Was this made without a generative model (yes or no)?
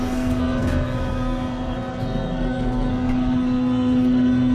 no